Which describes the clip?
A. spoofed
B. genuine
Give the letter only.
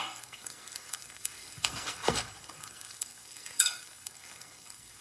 A